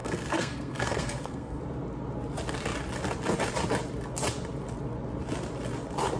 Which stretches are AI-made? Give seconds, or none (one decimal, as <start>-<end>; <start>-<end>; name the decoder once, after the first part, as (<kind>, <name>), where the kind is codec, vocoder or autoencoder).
0.0-1.6 (codec, SNAC)